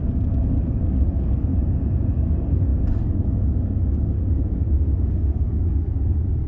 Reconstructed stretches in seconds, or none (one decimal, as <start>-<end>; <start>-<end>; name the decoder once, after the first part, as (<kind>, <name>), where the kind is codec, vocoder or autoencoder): 0.0-1.5 (codec, DAC); 2.1-6.5